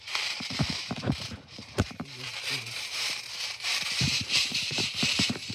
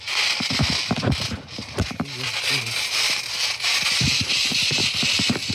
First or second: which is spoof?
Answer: first